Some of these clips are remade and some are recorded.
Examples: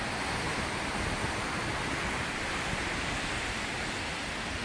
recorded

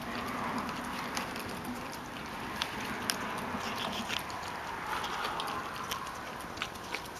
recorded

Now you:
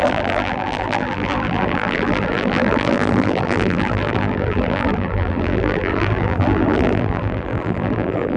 remade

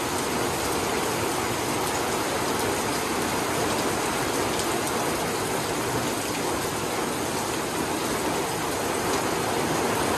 recorded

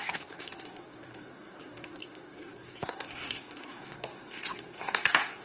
remade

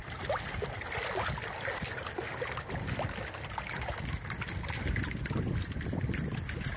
recorded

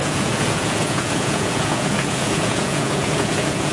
remade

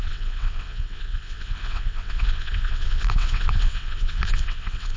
remade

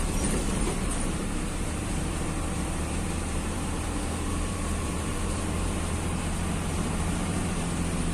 remade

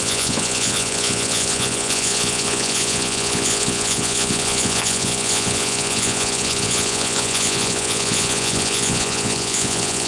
remade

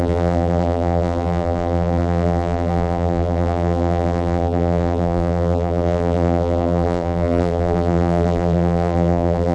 remade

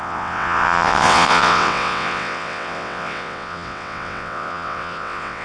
remade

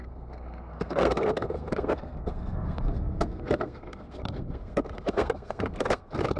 remade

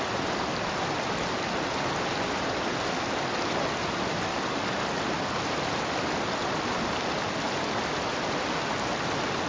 recorded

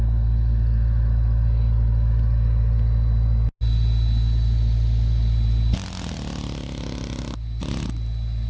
recorded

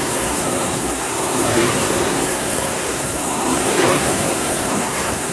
remade